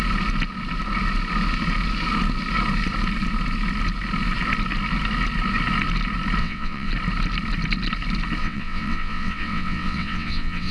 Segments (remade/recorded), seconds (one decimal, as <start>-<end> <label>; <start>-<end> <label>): 0.0-6.4 recorded; 6.4-6.9 remade; 6.9-8.4 recorded; 8.4-10.7 remade